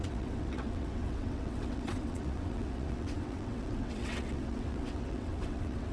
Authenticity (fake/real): fake